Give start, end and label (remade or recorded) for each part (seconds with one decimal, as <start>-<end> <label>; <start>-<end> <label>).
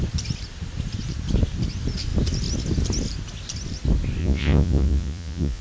0.0-4.2 recorded; 4.2-5.6 remade